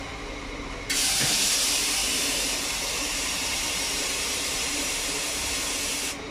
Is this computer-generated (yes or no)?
yes